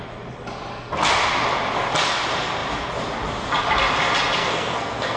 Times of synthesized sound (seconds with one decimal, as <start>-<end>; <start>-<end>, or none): 4.4-5.2